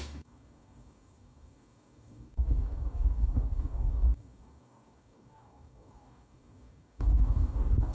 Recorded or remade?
remade